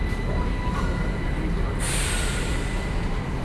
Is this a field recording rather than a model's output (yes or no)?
yes